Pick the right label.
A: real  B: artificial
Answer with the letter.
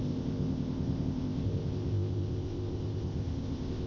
B